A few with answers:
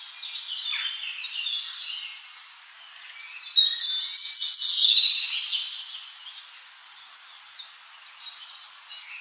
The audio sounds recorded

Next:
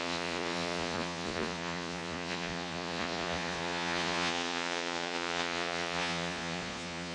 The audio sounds remade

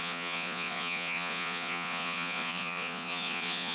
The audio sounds remade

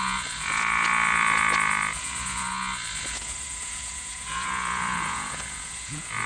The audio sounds remade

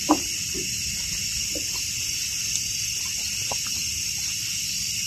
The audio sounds recorded